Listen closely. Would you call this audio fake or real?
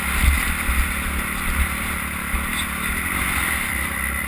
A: real